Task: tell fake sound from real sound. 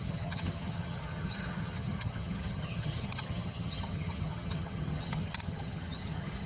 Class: fake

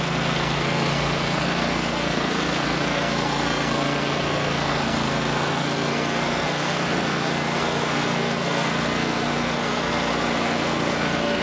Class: fake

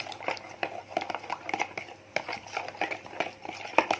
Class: fake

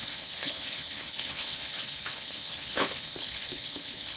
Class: fake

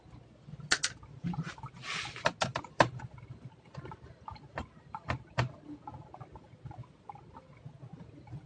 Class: real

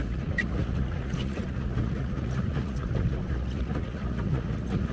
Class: fake